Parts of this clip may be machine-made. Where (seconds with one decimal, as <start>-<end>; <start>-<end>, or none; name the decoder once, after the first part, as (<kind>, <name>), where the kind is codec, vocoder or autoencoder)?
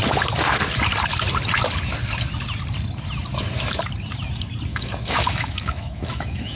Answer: 4.7-6.6 (autoencoder, DAC-VAE)